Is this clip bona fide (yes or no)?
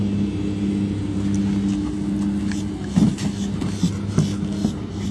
yes